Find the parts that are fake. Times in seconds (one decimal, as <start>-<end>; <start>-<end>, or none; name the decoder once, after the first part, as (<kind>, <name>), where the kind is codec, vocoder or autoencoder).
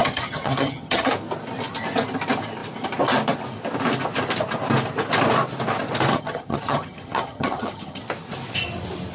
0.0-1.1 (vocoder, HiFi-GAN); 6.1-8.0